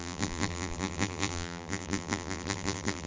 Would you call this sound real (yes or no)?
no